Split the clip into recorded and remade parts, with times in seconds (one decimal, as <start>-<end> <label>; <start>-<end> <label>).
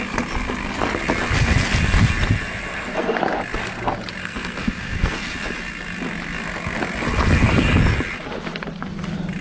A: 0.0-2.7 recorded; 2.7-3.2 remade; 3.2-4.2 recorded; 4.2-5.3 remade; 5.3-9.4 recorded